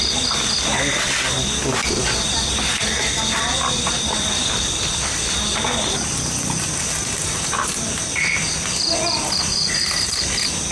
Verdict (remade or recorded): recorded